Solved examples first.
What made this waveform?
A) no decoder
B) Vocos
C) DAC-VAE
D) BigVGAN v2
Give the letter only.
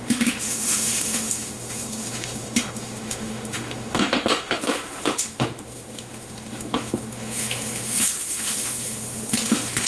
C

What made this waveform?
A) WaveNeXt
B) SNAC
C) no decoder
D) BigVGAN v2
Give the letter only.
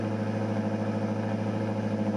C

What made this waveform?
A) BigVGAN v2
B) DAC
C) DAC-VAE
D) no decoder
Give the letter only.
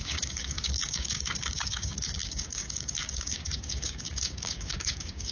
B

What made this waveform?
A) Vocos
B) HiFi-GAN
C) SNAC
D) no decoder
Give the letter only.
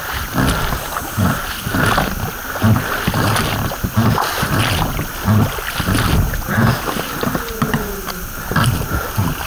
D